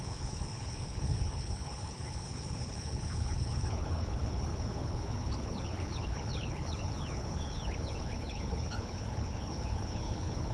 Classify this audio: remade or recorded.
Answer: remade